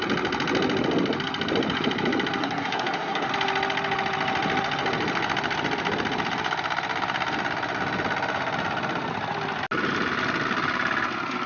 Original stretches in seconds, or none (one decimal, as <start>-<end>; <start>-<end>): 0.0-2.4; 3.3-11.5